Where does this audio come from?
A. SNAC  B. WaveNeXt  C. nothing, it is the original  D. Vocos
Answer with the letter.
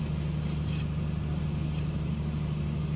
C